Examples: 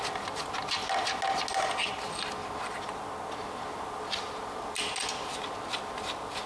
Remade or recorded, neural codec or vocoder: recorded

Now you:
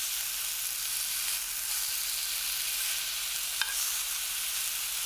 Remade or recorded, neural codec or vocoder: recorded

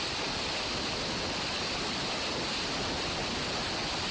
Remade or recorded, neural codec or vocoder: recorded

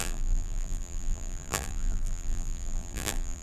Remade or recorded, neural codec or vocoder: remade, vocoder, BigVGAN v2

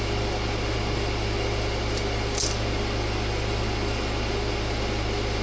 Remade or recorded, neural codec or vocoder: recorded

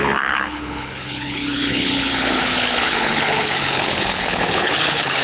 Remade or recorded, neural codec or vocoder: remade, codec, HILCodec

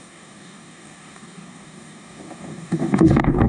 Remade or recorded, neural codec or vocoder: remade, codec, DAC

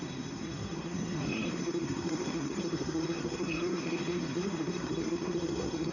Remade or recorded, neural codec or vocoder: remade, codec, SNAC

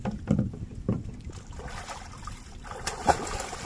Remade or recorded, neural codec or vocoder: recorded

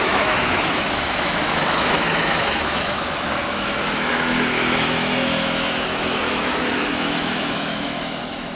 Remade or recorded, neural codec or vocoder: remade, autoencoder, DAC-VAE